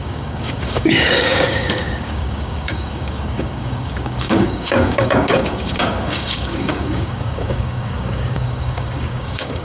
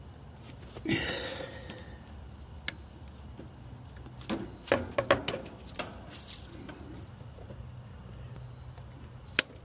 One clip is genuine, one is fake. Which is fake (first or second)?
first